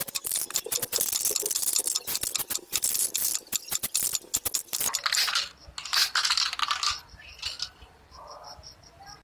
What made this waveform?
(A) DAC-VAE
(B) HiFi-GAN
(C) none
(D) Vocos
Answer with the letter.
C